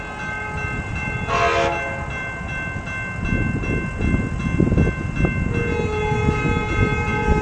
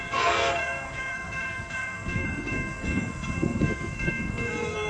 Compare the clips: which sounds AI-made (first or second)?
second